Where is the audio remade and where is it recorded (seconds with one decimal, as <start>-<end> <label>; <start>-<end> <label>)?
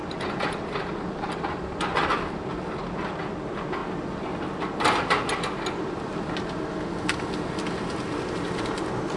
0.0-2.8 remade; 2.8-9.2 recorded